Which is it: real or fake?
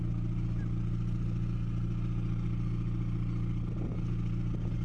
real